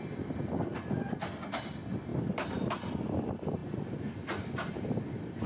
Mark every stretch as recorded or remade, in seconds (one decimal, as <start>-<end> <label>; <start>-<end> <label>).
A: 0.0-5.5 recorded